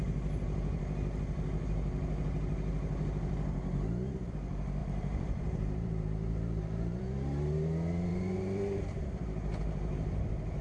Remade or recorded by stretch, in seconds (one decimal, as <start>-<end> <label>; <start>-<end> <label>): 0.0-4.8 recorded; 4.8-7.0 remade; 7.0-8.1 recorded; 8.1-8.9 remade; 8.9-10.6 recorded